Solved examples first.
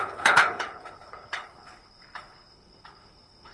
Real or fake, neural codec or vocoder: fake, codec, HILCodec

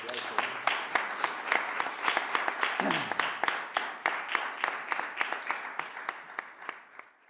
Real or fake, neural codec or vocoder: real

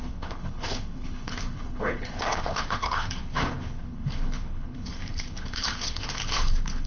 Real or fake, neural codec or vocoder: fake, codec, HILCodec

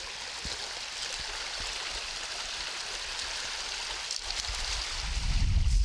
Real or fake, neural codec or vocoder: real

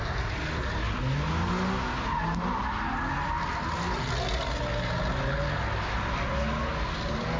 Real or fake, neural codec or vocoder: real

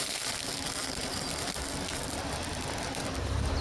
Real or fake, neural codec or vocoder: real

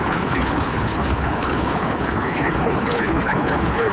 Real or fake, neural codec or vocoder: fake, codec, HILCodec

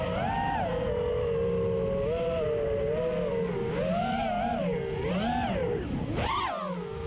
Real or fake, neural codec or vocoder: real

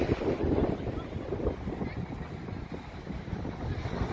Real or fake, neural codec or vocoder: real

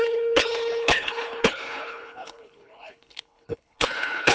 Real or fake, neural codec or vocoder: fake, codec, HILCodec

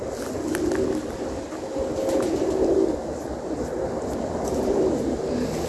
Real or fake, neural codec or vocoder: real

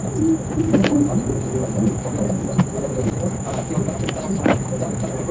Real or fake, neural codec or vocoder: real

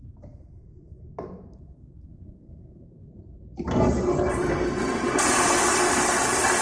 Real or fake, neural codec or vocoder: real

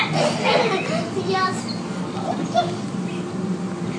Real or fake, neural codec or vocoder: real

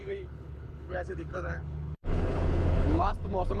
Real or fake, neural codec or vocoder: fake, codec, HILCodec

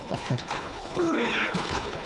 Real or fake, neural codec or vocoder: fake, codec, HILCodec